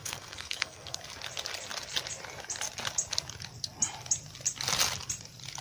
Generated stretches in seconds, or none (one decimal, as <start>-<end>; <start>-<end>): 0.0-1.0